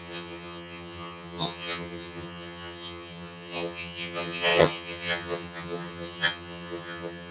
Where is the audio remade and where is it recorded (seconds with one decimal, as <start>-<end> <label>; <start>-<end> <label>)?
0.0-7.3 remade